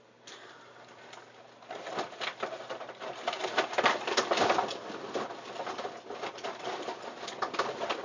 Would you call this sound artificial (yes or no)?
no